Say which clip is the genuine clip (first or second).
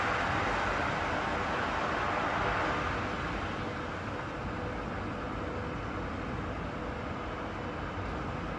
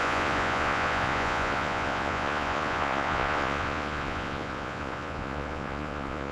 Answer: first